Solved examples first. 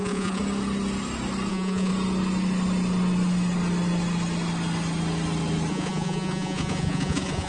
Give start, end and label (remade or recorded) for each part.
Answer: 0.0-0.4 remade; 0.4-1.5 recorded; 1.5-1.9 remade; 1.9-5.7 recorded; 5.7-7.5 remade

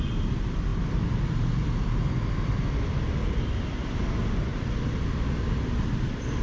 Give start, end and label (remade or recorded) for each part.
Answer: 0.0-6.4 recorded

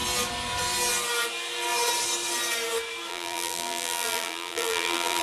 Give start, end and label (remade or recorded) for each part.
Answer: 0.0-3.1 recorded; 3.1-5.2 remade

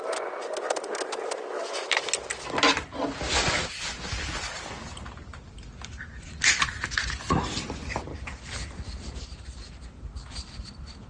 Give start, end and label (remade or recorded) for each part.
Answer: 0.0-11.1 recorded

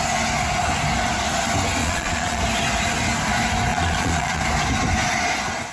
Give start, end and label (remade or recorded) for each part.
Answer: 0.0-1.8 recorded; 1.8-2.4 remade; 2.4-3.7 recorded; 3.7-4.4 remade; 4.4-5.7 recorded